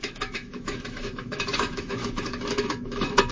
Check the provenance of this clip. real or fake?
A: fake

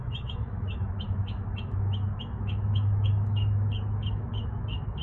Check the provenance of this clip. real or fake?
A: fake